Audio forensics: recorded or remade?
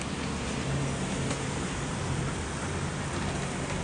recorded